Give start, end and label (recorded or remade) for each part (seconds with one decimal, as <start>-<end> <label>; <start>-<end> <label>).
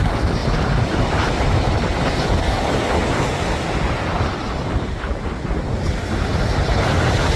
0.0-0.4 recorded; 0.4-2.2 remade; 2.2-7.4 recorded